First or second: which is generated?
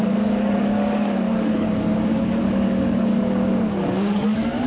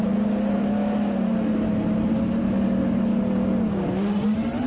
first